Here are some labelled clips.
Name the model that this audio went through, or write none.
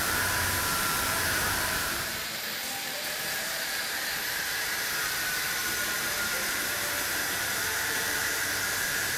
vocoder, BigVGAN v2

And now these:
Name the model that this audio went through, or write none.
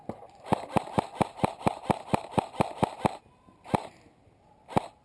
none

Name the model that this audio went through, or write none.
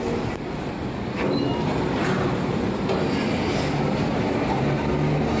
none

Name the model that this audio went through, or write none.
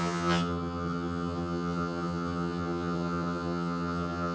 vocoder, HiFi-GAN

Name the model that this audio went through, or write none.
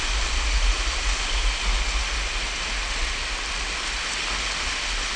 none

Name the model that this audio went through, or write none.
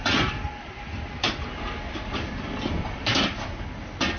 vocoder, BigVGAN v2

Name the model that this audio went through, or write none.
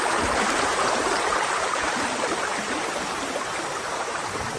vocoder, BigVGAN v2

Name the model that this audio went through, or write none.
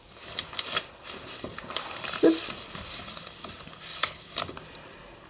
vocoder, BigVGAN v2